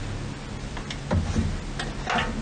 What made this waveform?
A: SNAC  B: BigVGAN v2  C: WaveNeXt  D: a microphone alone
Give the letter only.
D